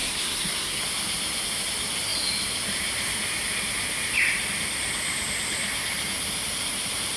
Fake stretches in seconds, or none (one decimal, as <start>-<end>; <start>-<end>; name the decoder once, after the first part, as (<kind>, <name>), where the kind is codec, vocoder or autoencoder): 0.0-0.8 (codec, SNAC)